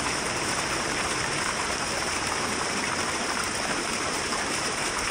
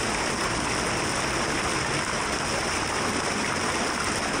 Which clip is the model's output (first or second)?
first